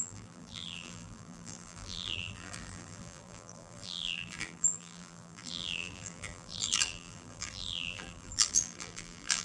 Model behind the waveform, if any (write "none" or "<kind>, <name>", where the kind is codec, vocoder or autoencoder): vocoder, BigVGAN v2